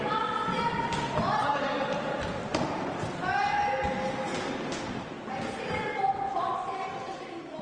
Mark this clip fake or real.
real